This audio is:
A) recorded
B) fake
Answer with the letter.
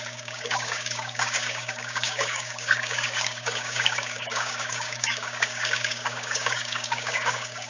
B